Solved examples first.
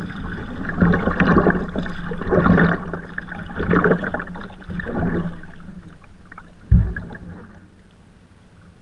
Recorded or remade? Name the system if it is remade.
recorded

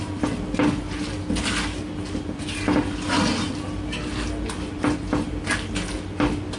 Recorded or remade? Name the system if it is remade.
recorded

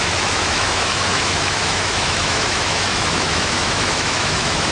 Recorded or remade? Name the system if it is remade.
remade, autoencoder, DAC-VAE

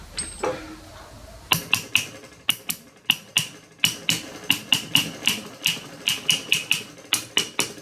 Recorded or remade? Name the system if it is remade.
recorded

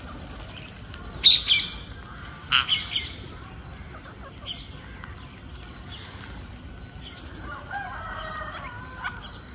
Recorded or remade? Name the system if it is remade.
recorded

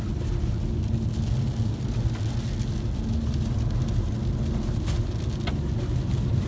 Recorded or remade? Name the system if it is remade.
recorded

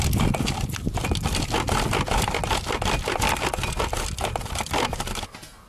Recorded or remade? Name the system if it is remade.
recorded